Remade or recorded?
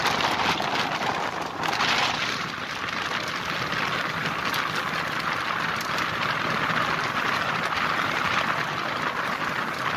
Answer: recorded